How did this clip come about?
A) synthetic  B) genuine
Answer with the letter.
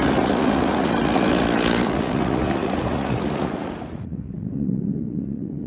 A